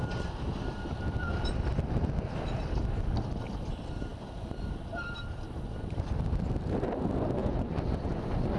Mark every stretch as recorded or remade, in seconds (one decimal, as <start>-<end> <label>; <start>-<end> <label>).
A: 0.0-7.4 recorded; 7.4-8.6 remade